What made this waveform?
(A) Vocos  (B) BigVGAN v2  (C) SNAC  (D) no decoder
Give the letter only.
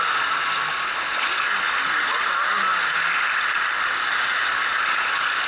D